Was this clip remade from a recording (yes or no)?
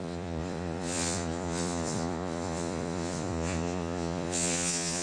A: yes